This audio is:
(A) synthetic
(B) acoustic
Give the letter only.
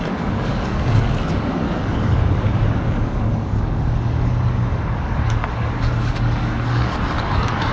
A